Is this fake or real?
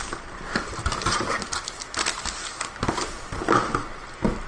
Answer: real